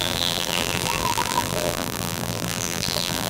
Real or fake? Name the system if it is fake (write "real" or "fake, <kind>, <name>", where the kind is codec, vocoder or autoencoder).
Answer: fake, vocoder, BigVGAN v2